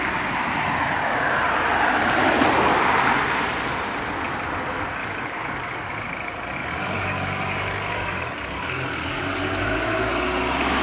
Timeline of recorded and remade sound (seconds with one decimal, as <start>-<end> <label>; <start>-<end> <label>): 0.0-5.0 recorded; 5.0-5.9 remade; 5.9-6.6 recorded; 6.6-10.1 remade; 10.1-10.8 recorded